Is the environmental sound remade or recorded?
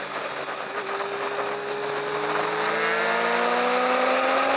recorded